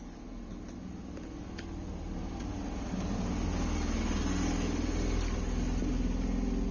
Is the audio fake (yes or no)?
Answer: no